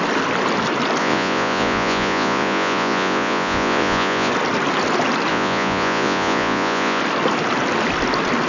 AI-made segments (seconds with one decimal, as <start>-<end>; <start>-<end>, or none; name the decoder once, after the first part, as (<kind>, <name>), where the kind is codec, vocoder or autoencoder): 1.0-4.3 (vocoder, Vocos); 5.3-7.0